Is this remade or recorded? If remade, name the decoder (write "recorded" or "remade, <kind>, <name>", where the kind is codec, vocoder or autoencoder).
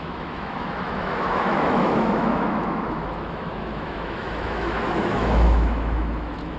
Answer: remade, autoencoder, DAC-VAE